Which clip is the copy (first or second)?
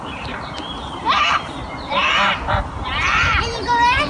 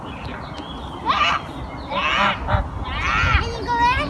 first